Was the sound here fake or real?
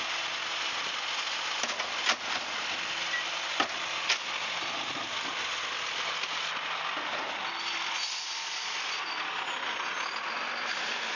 real